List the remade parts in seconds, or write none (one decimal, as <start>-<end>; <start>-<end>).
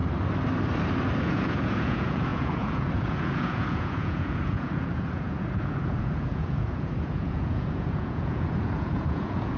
1.2-9.6